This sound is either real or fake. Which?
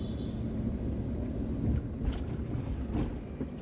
real